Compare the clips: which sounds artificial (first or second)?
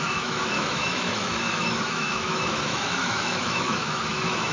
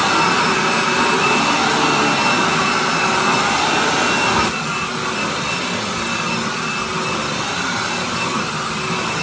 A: first